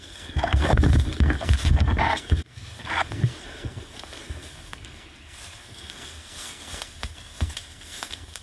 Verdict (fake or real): fake